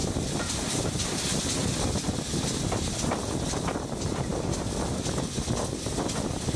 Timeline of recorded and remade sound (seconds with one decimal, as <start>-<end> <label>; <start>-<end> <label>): 0.0-6.6 recorded